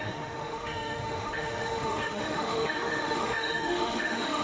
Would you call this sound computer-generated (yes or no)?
yes